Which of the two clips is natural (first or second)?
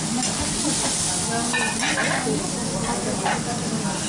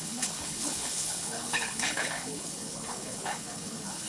first